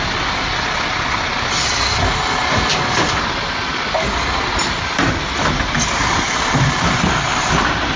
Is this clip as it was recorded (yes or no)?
yes